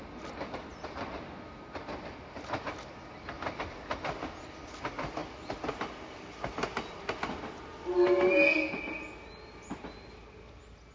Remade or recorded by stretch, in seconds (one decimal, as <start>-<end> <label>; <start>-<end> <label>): 0.0-10.9 recorded